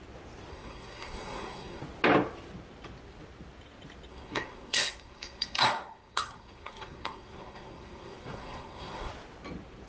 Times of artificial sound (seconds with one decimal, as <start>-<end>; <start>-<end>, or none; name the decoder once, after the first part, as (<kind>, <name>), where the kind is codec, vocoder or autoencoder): 0.5-1.8 (codec, SNAC); 4.1-9.1

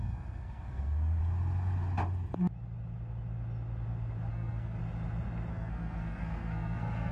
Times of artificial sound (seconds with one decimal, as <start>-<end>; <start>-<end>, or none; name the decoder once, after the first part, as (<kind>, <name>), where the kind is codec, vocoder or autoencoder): 0.0-1.2 (codec, SNAC); 4.3-4.8; 5.5-7.1

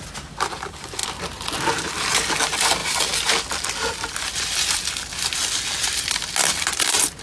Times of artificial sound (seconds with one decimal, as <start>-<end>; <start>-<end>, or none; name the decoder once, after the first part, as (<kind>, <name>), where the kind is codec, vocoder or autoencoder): none

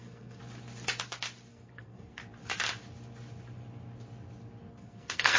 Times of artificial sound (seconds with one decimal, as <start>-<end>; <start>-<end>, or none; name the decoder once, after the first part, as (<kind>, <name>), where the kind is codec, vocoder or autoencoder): 0.0-0.4 (codec, SNAC); 1.5-2.2; 4.7-5.4

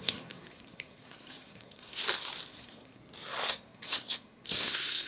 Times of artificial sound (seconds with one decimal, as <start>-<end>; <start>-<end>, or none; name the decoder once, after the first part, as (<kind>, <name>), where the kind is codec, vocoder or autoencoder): 0.0-2.0 (codec, SNAC); 2.5-3.0; 3.5-5.1

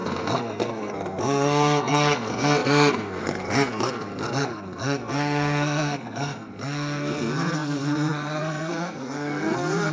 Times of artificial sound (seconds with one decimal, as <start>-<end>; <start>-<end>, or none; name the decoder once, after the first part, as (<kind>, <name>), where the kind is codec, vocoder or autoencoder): 0.0-9.9 (codec, SNAC)

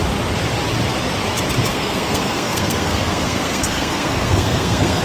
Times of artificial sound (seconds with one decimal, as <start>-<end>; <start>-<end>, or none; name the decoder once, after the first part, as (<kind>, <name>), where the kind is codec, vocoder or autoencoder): 1.7-5.0 (codec, SNAC)

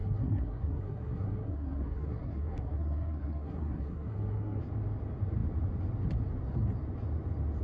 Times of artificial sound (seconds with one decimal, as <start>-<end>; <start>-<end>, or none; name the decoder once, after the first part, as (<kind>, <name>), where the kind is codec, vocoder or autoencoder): 0.0-4.6 (codec, SNAC)